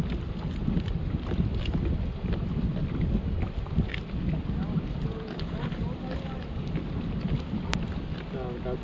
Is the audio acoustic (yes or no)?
yes